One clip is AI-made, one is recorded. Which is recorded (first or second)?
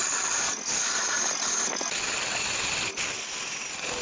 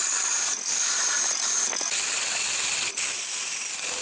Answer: first